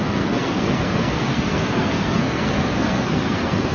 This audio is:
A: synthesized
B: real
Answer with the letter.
A